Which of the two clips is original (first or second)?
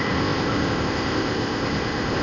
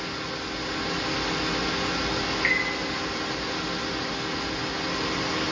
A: second